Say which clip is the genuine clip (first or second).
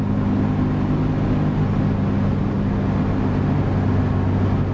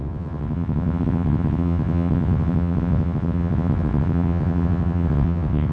first